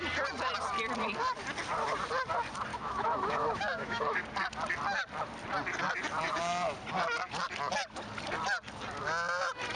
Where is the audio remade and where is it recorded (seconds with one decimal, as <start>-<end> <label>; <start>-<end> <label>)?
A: 0.0-2.7 recorded; 2.7-4.2 remade; 4.2-9.8 recorded